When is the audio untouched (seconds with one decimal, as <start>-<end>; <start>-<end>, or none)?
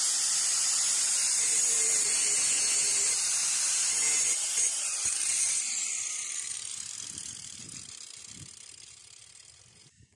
0.0-0.6; 2.2-2.8; 7.6-10.2